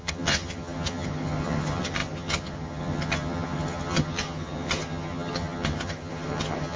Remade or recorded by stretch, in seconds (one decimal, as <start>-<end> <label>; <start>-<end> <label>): 0.0-6.8 remade